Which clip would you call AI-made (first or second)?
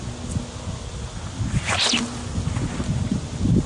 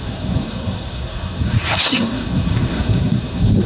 second